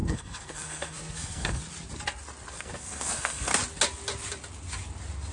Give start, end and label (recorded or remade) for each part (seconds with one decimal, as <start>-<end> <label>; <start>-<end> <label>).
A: 0.0-1.6 remade; 1.6-2.5 recorded; 2.5-3.5 remade; 3.5-5.3 recorded